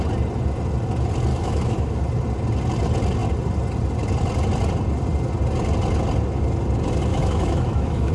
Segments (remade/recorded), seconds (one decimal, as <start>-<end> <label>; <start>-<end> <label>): 0.0-1.3 recorded; 1.3-2.0 remade; 2.0-7.1 recorded; 7.1-8.1 remade